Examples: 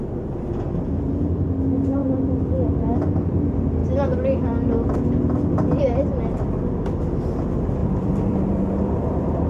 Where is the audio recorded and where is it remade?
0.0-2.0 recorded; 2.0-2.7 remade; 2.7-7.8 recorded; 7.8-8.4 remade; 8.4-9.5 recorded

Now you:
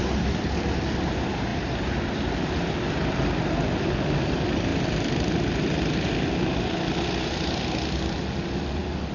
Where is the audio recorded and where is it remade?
0.0-9.1 recorded